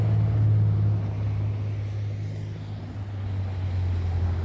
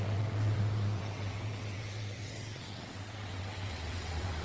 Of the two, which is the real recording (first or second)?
first